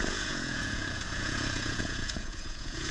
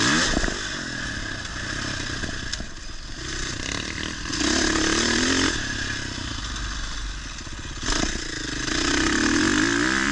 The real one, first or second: second